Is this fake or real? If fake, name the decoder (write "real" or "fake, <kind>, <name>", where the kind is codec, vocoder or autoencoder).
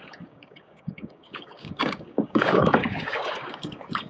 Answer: fake, codec, DAC